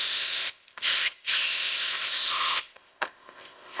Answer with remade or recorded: remade